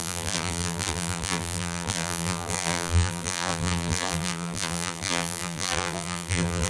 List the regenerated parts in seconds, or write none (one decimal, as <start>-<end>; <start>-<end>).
0.0-6.7